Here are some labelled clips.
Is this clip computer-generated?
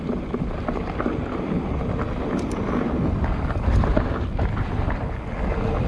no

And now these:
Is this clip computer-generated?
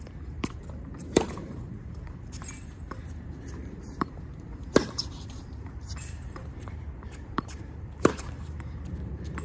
yes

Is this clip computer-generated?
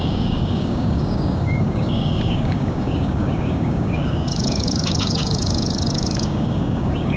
yes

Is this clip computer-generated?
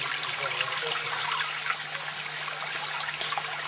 no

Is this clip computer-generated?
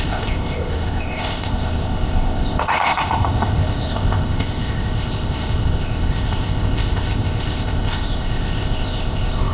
yes